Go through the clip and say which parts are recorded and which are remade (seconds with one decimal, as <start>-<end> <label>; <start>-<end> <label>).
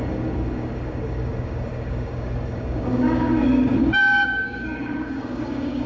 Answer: 0.0-5.9 remade